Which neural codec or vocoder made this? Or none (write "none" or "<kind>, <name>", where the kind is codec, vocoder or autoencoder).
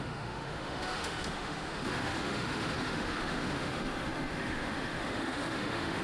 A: autoencoder, DAC-VAE